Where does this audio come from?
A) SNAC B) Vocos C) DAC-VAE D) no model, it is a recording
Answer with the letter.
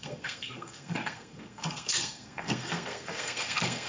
A